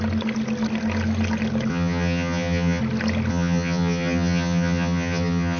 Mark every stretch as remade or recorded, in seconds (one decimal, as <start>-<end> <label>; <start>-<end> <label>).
0.0-1.7 recorded; 1.7-2.8 remade; 2.8-3.3 recorded; 3.3-5.6 remade